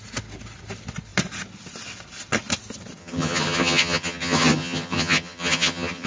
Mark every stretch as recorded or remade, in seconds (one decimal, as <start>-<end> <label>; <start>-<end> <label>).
0.0-3.0 recorded; 3.0-6.1 remade